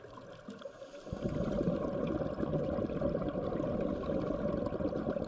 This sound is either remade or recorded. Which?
recorded